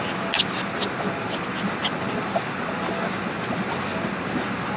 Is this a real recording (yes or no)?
yes